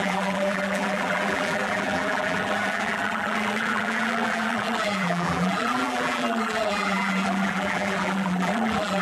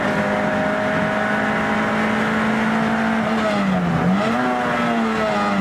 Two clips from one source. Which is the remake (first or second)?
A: first